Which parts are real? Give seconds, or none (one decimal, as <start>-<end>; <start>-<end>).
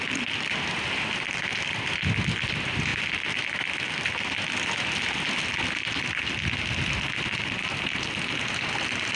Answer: 0.0-9.2